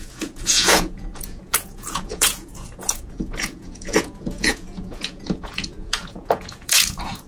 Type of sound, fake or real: fake